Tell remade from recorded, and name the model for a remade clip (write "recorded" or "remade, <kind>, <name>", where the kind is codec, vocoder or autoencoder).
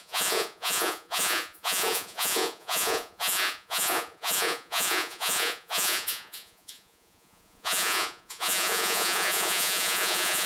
remade, vocoder, Vocos